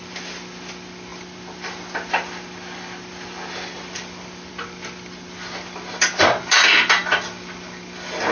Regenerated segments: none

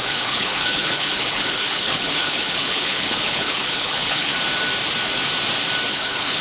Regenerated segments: 0.0-4.3; 5.9-6.4